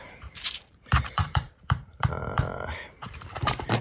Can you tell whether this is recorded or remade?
remade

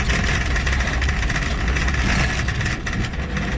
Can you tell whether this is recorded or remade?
recorded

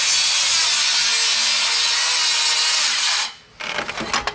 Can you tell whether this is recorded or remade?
recorded